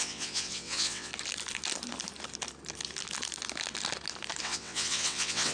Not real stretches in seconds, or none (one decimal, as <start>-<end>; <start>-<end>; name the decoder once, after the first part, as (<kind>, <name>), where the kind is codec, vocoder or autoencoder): 0.0-1.1 (vocoder, WaveNeXt); 4.4-5.5

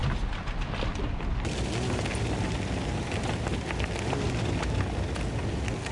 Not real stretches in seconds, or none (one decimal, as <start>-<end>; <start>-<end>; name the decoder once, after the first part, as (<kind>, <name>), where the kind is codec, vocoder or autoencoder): none

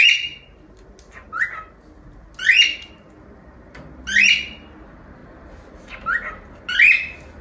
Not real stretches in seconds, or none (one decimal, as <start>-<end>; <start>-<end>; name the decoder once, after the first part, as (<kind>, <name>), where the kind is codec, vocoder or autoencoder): none

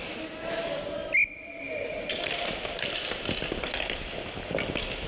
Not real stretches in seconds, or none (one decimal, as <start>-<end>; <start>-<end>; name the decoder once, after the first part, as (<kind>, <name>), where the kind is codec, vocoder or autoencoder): none

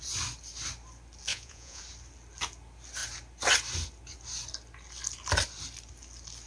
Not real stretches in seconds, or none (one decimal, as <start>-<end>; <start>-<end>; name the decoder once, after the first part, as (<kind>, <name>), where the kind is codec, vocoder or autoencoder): 1.3-1.8 (vocoder, Vocos)

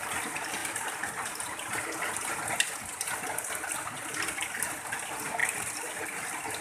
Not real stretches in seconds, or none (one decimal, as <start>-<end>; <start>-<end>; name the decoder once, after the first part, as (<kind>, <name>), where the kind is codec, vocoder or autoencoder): none